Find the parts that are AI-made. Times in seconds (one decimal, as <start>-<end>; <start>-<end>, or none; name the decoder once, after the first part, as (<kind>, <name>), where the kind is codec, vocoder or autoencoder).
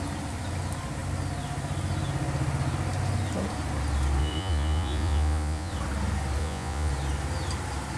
4.2-5.7 (vocoder, Vocos); 6.4-6.9